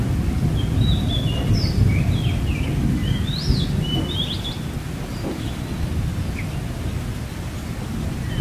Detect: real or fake real